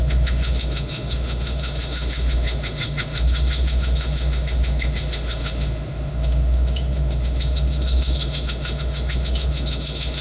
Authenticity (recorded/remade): remade